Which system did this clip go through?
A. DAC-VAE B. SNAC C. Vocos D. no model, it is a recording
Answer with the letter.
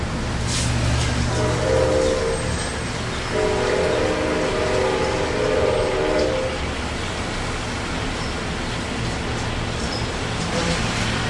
D